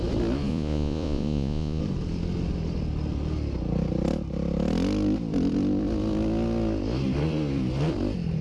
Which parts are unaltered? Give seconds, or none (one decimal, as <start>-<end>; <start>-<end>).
0.0-0.5; 1.8-8.4